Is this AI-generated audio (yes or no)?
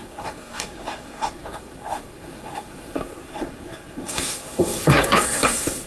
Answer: yes